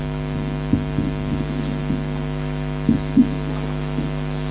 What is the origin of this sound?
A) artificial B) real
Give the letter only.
B